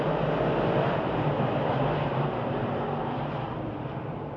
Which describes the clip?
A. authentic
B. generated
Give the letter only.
B